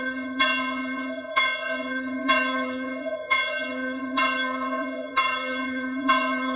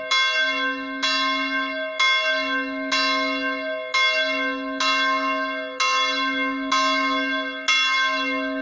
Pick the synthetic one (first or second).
first